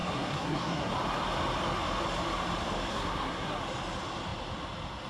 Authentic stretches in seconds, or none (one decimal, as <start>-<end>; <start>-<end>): 0.9-2.9; 3.6-5.1